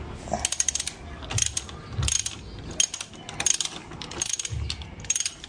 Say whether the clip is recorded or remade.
recorded